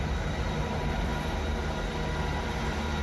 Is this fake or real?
real